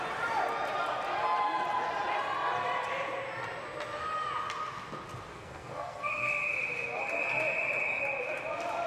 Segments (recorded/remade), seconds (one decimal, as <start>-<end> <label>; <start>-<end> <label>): 0.0-5.3 recorded; 5.3-6.3 remade; 6.3-8.9 recorded

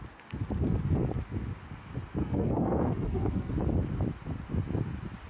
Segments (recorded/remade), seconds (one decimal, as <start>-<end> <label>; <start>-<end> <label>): 0.0-2.2 recorded; 2.2-3.5 remade; 3.5-5.3 recorded

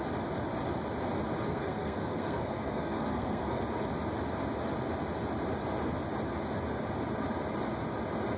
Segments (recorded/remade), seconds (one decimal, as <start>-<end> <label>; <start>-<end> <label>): 0.0-1.5 recorded; 1.5-3.6 remade; 3.6-8.4 recorded

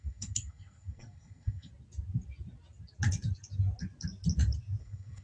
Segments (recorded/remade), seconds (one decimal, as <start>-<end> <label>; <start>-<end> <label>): 0.0-1.7 remade; 1.7-4.8 recorded; 4.8-5.2 remade

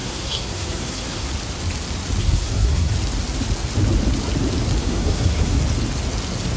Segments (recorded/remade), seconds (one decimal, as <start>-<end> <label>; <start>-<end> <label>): 0.0-1.3 remade; 1.3-2.2 recorded; 2.2-2.9 remade; 2.9-4.8 recorded; 4.8-5.6 remade; 5.6-6.6 recorded

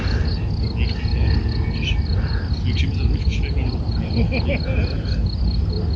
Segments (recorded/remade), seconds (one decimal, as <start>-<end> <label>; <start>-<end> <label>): 0.0-6.0 recorded

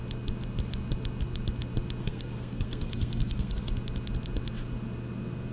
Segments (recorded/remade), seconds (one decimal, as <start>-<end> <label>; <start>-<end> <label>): 0.0-2.0 recorded; 2.0-3.7 remade; 3.7-5.5 recorded